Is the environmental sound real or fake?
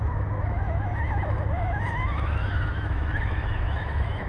fake